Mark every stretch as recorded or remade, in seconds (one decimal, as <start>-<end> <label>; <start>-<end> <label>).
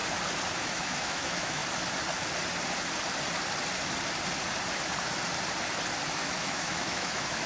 0.0-0.6 recorded; 0.6-1.6 remade; 1.6-6.1 recorded; 6.1-7.5 remade